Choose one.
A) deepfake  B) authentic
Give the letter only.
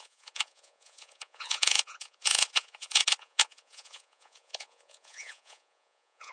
A